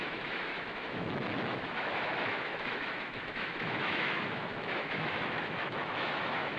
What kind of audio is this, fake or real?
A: fake